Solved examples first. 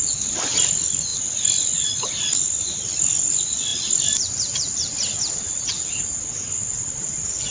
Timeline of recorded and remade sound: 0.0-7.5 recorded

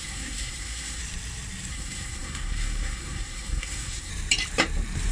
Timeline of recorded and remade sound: 0.0-1.0 remade; 1.0-1.7 recorded; 1.7-4.1 remade; 4.1-5.1 recorded

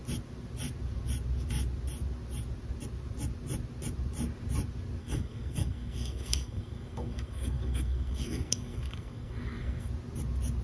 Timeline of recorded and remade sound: 0.0-5.0 recorded; 5.0-9.9 remade; 9.9-10.6 recorded

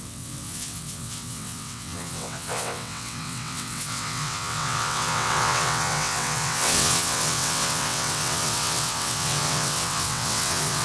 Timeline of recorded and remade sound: 0.0-10.8 remade

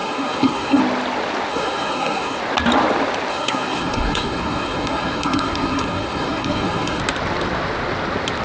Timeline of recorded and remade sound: 0.0-0.8 remade; 0.8-1.5 recorded; 1.5-2.4 remade; 2.4-3.3 recorded; 3.3-7.0 remade; 7.0-8.4 recorded

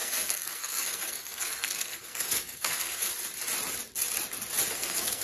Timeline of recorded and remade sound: 0.0-3.1 remade; 3.1-4.7 recorded; 4.7-5.2 remade